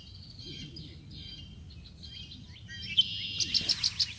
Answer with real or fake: real